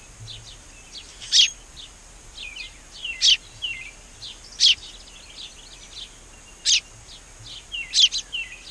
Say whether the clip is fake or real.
real